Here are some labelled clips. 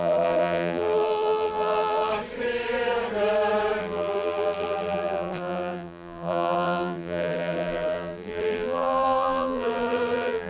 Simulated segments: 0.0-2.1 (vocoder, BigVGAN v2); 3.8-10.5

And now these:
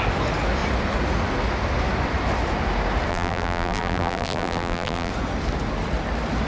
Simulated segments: 3.1-5.1 (vocoder, BigVGAN v2)

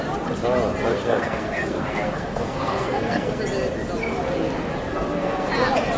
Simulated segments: 0.9-3.4 (codec, SNAC); 4.9-5.5